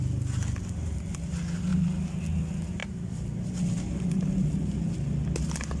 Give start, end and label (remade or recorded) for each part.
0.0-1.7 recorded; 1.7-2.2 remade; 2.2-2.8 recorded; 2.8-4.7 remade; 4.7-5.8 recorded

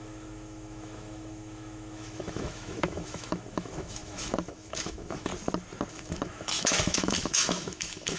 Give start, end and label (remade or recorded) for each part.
0.0-5.3 remade; 5.3-5.9 recorded; 5.9-8.2 remade

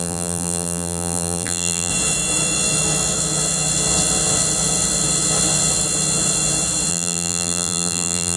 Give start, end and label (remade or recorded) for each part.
0.0-1.9 remade; 1.9-6.9 recorded; 6.9-8.4 remade

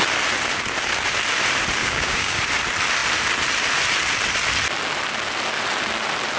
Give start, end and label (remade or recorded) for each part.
0.0-1.8 recorded; 1.8-2.4 remade; 2.4-6.4 recorded